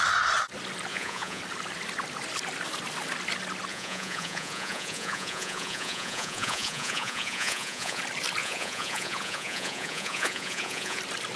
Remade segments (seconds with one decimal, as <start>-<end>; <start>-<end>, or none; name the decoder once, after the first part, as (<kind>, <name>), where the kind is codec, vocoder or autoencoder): 0.9-1.4 (vocoder, Vocos); 3.7-8.0; 8.4-11.0